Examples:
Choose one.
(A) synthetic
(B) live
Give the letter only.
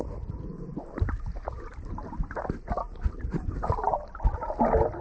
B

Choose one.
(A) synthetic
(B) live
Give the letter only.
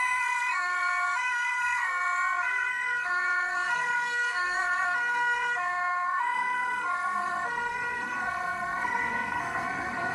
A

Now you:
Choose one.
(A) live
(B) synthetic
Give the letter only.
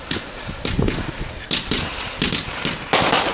A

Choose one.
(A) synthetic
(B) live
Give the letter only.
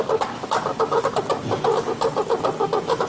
B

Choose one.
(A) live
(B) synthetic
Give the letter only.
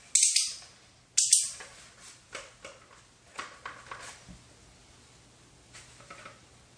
A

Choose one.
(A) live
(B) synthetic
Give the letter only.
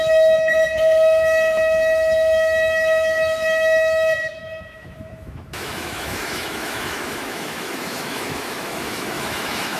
B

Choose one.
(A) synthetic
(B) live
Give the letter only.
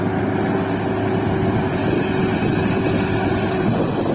B